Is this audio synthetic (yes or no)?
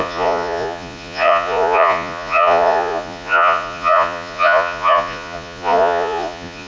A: yes